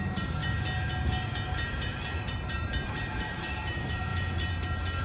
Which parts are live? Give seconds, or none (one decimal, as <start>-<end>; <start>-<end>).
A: 0.4-2.3; 4.1-5.0